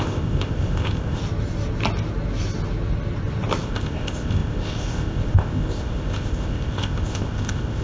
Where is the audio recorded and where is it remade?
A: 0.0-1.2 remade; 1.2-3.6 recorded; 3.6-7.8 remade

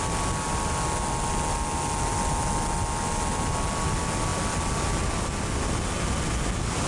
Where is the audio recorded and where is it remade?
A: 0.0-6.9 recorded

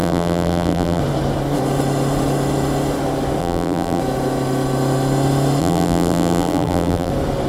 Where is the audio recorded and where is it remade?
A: 0.0-1.0 remade; 1.0-3.4 recorded; 3.4-4.0 remade; 4.0-5.6 recorded; 5.6-7.1 remade; 7.1-7.5 recorded